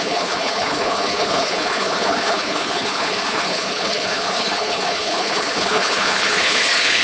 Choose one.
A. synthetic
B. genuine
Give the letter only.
A